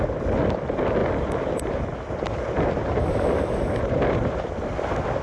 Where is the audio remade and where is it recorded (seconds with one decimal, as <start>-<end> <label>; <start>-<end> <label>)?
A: 0.0-3.0 recorded; 3.0-3.8 remade; 3.8-5.2 recorded